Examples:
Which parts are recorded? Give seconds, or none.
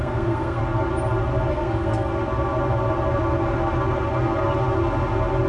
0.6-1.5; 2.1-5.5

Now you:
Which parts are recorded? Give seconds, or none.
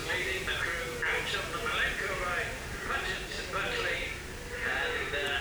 0.6-1.8; 4.9-5.4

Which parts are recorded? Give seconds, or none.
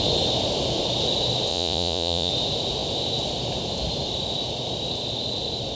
0.0-1.5; 2.3-5.8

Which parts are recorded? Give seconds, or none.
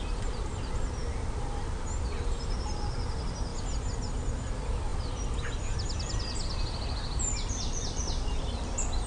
0.0-9.1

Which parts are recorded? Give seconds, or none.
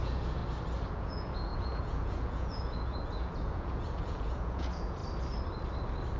0.4-0.9; 5.0-6.2